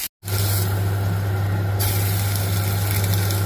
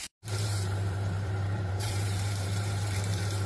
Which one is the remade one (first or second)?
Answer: second